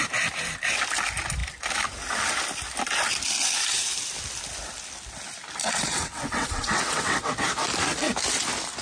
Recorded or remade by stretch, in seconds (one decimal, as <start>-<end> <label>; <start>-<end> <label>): 0.0-5.6 recorded; 5.6-7.3 remade; 7.3-8.8 recorded